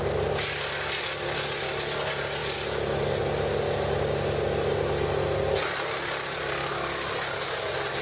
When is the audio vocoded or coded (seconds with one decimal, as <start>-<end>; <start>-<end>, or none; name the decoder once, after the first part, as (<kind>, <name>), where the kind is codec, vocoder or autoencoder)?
none